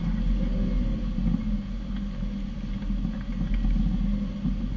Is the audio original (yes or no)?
yes